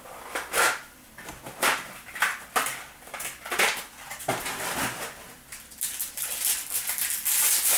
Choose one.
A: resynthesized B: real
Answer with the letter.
B